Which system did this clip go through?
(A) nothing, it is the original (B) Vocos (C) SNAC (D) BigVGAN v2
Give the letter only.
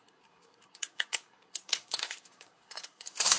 C